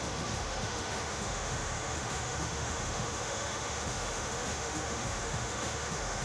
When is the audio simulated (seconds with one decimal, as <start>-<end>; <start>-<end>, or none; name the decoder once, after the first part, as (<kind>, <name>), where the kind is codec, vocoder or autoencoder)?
0.0-6.2 (autoencoder, DAC-VAE)